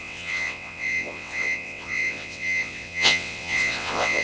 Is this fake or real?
fake